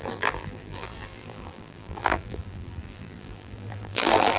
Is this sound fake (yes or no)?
yes